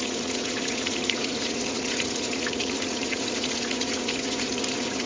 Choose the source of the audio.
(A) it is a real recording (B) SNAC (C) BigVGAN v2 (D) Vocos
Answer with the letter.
D